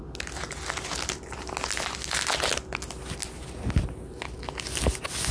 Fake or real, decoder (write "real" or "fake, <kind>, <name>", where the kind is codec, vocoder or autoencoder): real